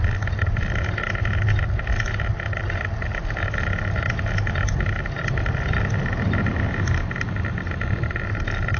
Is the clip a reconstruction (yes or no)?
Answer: no